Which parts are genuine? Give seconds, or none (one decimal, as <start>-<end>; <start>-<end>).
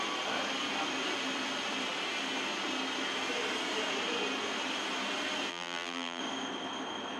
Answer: 0.0-5.5; 6.2-7.2